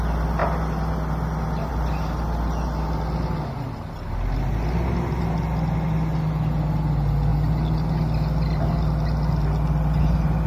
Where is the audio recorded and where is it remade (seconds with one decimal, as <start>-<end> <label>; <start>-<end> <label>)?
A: 0.0-10.5 recorded